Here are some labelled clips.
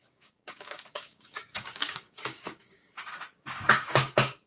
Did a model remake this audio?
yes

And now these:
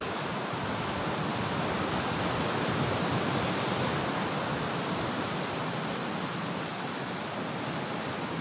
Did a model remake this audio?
no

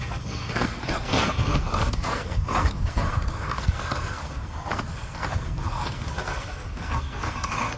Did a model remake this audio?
yes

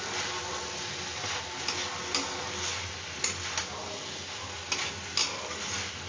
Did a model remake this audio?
no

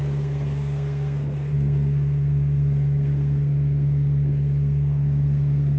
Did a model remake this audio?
yes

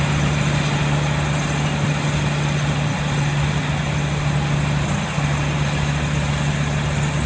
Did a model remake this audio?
no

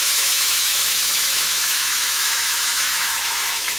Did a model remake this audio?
yes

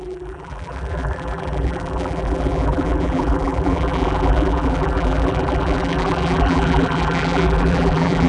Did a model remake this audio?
yes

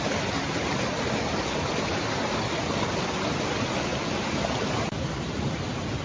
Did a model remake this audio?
no